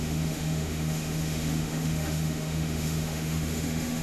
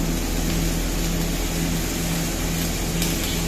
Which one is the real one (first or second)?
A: second